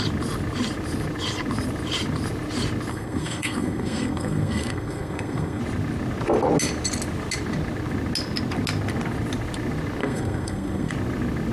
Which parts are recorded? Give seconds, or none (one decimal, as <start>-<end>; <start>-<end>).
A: 0.0-2.9; 5.6-10.0; 10.9-11.5